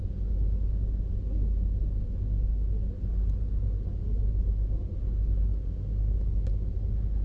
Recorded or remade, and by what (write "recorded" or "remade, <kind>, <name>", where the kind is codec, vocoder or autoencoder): recorded